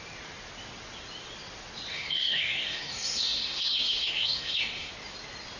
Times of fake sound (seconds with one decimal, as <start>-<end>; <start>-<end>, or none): 1.9-4.9